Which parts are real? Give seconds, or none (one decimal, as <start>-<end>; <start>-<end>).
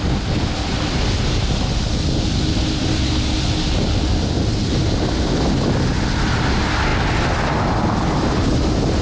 0.0-9.0